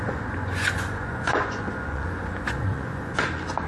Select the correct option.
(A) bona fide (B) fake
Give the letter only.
B